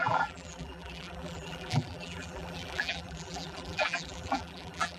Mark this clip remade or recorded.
remade